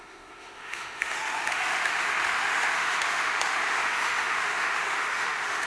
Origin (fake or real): fake